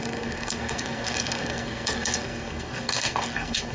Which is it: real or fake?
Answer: fake